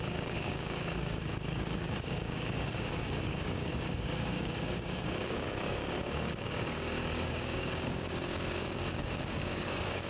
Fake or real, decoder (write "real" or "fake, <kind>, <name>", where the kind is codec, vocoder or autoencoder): fake, codec, DAC